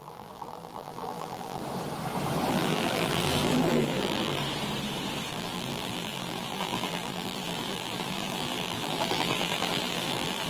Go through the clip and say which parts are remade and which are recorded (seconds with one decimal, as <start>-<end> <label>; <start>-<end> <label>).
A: 0.0-1.6 remade; 1.6-2.5 recorded; 2.5-4.4 remade; 4.4-5.3 recorded; 5.3-10.5 remade